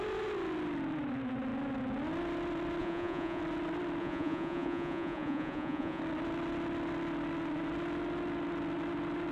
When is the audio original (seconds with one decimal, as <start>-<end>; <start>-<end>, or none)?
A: 0.0-2.8; 3.4-4.0; 6.0-9.3

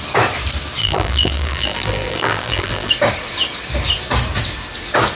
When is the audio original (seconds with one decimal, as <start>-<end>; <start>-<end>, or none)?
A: 0.0-0.8; 2.9-5.1

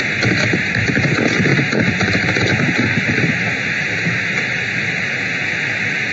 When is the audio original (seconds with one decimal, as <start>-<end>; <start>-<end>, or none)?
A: 0.0-0.4; 1.0-1.5; 4.6-6.1

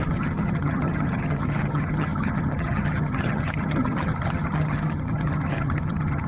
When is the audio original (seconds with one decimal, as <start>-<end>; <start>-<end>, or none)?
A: none

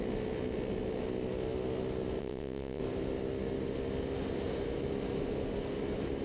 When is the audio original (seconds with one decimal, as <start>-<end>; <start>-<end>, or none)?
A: 0.0-2.2; 2.8-6.2

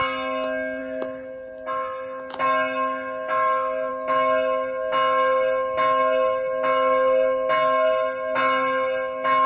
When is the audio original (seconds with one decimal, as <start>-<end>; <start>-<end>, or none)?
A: 0.0-9.5